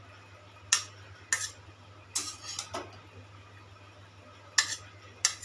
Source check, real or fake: real